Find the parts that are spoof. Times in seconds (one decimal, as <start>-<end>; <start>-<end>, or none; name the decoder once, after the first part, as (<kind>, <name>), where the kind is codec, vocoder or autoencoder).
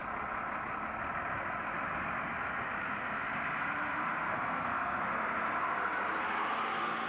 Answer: 4.3-5.0 (codec, SNAC)